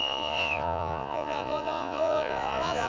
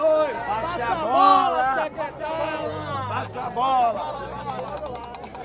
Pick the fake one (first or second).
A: first